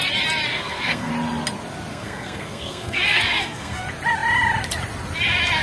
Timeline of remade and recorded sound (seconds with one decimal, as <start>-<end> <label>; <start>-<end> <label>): 0.0-0.5 recorded; 0.5-1.1 remade; 1.1-1.9 recorded; 1.9-3.8 remade; 3.8-5.6 recorded